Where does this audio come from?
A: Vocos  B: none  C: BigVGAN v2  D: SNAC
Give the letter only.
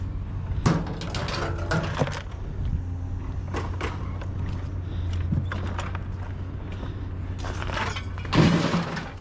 B